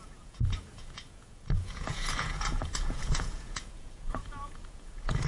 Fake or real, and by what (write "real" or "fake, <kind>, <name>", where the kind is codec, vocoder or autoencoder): fake, vocoder, Vocos